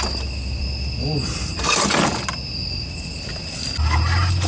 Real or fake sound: real